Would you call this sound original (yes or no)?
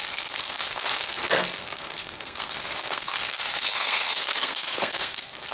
no